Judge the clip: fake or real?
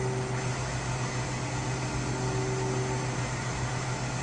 real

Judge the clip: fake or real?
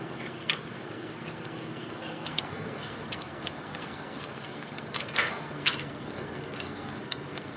fake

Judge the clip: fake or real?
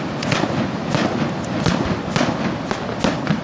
real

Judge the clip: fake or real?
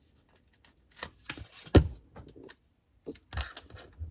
real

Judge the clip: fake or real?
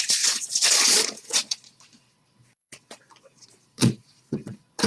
fake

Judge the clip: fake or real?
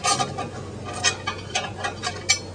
real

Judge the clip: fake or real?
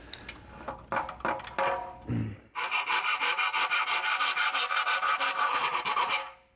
real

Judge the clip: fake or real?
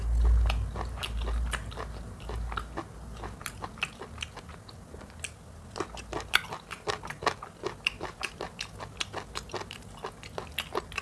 real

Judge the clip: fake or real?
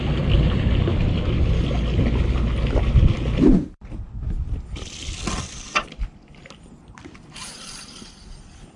real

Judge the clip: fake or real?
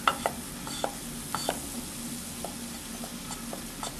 real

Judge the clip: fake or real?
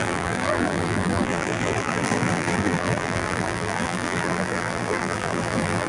fake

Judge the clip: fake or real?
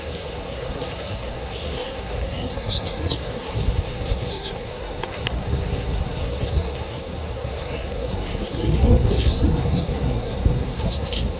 fake